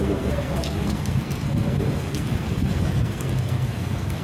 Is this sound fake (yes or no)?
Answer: yes